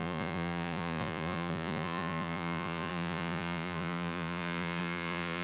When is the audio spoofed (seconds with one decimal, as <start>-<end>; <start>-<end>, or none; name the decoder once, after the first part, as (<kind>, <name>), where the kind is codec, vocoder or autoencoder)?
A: 0.0-5.4 (vocoder, Vocos)